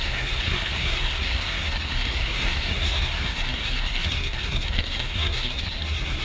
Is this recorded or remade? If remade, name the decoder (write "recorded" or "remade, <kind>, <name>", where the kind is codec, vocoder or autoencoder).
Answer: remade, codec, SNAC